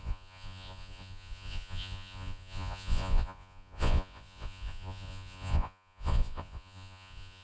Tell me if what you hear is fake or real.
fake